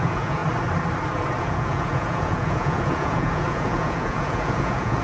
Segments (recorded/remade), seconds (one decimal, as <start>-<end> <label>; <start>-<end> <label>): 0.0-0.4 remade; 0.4-1.4 recorded; 1.4-5.0 remade